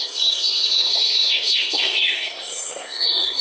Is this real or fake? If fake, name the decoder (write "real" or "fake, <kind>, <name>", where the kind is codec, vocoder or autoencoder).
fake, codec, SNAC